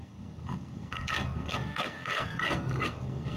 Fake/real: fake